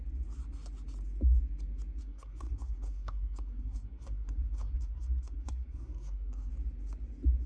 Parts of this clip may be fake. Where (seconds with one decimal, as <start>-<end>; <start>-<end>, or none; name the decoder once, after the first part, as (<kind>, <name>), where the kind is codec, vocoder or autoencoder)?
2.0-6.5 (codec, SNAC)